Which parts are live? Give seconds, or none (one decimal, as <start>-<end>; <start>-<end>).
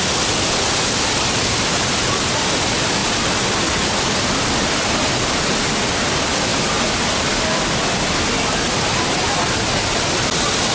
0.0-10.7